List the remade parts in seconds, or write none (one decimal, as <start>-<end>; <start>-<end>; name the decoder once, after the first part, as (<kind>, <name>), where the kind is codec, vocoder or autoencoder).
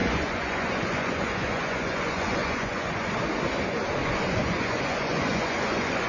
0.0-3.1 (vocoder, Vocos); 4.0-6.1